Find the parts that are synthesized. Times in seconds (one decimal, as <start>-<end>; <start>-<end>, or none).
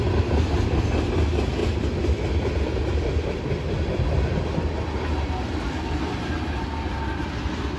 none